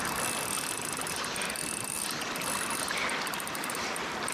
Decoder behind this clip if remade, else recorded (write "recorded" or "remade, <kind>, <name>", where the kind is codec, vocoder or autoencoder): recorded